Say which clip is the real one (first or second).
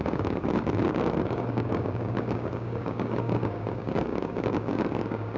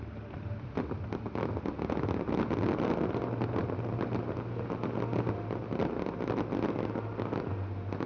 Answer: second